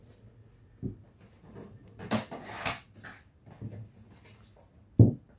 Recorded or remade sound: recorded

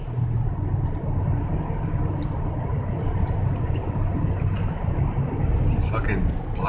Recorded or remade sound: recorded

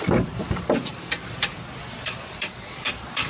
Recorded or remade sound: remade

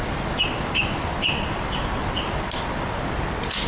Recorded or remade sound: recorded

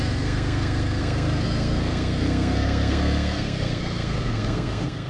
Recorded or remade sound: remade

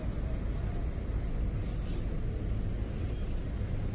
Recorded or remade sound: recorded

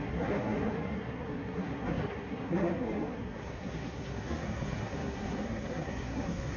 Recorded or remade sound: remade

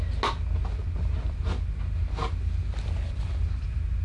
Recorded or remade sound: recorded